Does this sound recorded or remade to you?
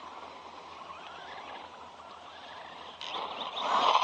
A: recorded